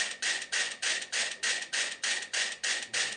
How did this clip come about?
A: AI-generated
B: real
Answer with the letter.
A